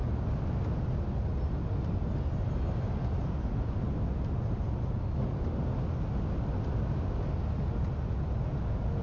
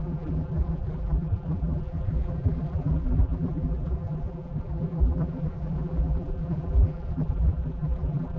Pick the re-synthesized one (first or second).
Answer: second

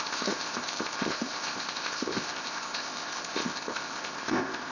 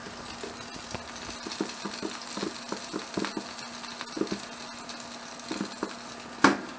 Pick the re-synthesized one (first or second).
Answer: first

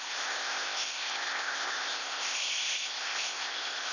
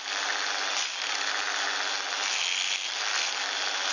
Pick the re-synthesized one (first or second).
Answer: first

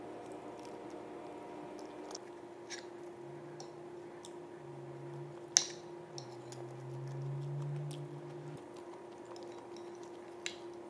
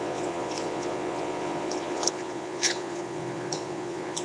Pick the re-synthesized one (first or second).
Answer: second